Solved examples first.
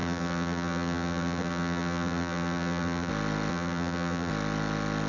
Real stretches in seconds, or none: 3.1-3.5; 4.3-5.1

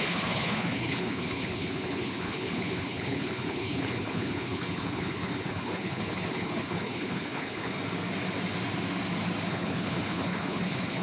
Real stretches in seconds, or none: 7.7-9.5